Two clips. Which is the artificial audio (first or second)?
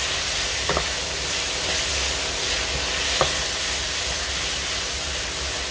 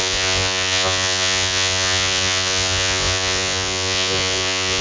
second